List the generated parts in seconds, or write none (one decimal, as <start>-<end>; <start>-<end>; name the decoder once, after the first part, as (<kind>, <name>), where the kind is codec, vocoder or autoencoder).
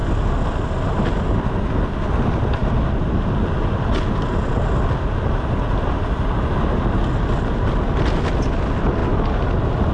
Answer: none